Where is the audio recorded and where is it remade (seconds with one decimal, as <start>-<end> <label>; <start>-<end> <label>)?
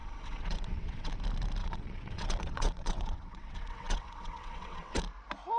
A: 0.0-1.1 remade; 1.1-1.6 recorded; 1.6-5.0 remade; 5.0-5.6 recorded